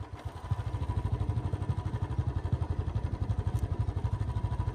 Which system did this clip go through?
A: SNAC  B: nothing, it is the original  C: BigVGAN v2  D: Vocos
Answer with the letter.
B